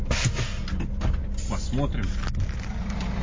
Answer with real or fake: real